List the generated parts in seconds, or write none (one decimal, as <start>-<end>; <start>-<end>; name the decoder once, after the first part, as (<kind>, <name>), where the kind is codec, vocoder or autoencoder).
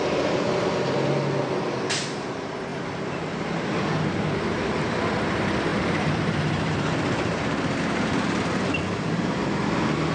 2.7-3.8 (vocoder, BigVGAN v2); 5.7-9.1